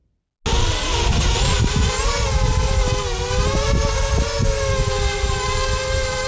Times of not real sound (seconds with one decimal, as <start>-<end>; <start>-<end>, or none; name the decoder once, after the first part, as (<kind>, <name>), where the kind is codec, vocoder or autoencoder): none